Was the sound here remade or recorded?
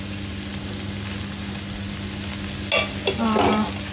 recorded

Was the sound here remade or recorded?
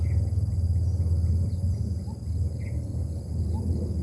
recorded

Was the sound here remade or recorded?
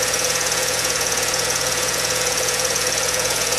remade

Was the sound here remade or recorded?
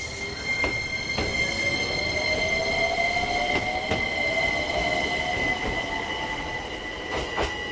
recorded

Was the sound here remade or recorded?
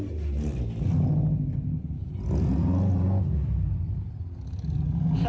recorded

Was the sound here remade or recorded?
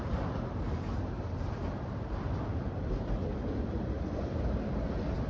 remade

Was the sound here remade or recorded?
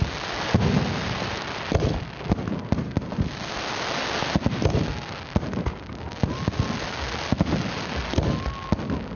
recorded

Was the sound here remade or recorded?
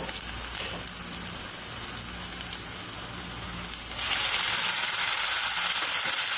recorded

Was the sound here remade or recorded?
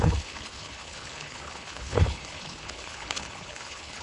remade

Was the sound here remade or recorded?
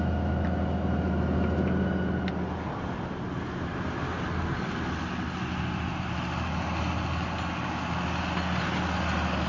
recorded